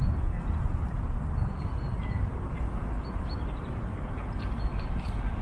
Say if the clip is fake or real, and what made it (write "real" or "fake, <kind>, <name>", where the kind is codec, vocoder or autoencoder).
real